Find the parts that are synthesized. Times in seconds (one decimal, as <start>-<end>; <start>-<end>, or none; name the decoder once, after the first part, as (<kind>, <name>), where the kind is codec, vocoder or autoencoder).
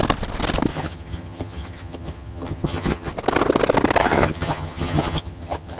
0.7-3.1 (vocoder, HiFi-GAN); 4.0-5.8